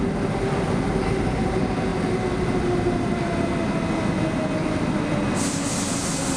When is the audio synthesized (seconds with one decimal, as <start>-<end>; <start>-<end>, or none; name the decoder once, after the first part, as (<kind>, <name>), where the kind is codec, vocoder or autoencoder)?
none

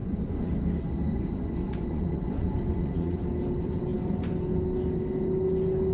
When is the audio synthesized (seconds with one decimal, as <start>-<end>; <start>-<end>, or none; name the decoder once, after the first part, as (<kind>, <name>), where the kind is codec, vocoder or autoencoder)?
0.0-0.5 (vocoder, Vocos); 1.1-3.2

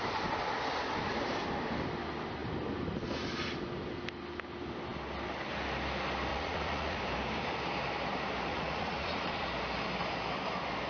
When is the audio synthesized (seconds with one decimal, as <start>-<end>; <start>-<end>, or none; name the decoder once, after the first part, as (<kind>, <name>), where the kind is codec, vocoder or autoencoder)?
6.3-7.0 (vocoder, Vocos); 8.5-9.5

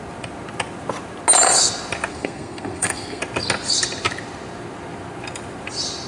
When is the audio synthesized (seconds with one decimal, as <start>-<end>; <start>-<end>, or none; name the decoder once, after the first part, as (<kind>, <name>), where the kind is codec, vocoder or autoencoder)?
2.1-3.2 (codec, SNAC)